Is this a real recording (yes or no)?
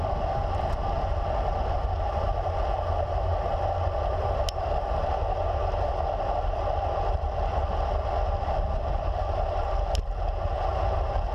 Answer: yes